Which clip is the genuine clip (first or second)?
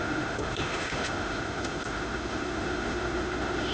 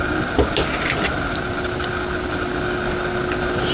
second